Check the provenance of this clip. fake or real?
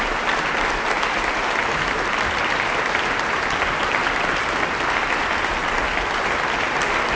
real